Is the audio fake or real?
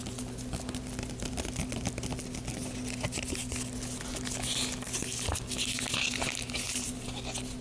real